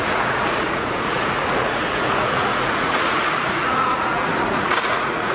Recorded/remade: remade